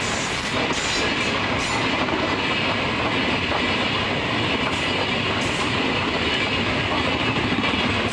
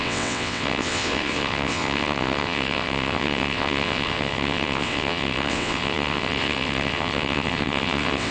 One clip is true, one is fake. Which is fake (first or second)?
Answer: second